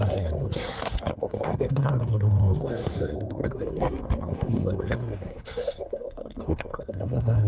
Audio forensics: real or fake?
fake